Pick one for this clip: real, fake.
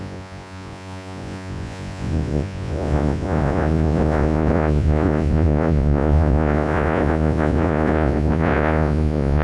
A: fake